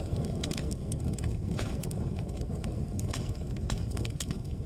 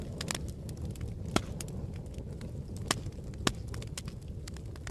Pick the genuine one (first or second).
second